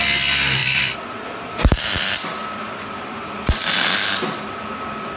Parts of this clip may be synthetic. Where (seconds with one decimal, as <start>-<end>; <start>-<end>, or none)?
0.6-3.7